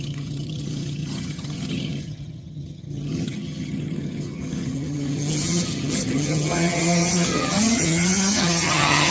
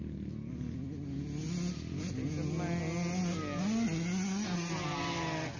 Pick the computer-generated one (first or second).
first